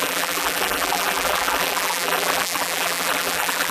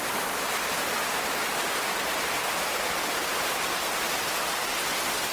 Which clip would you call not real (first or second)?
first